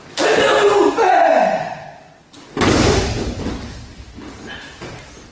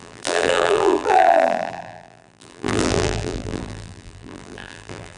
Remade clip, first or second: second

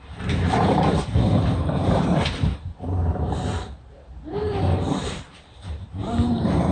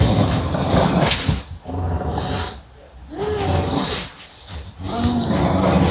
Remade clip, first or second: first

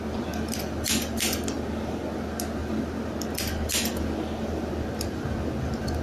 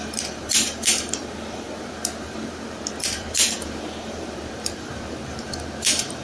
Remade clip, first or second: second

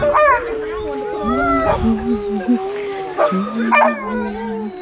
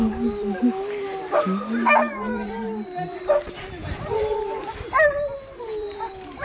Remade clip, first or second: second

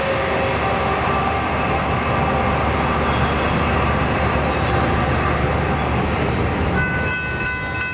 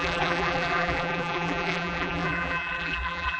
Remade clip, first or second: second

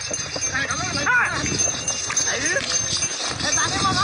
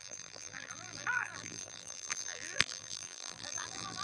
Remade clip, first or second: second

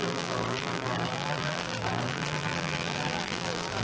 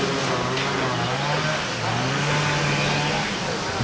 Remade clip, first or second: first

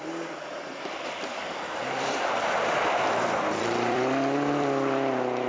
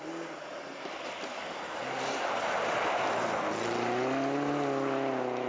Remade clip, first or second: first